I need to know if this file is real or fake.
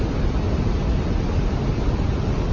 real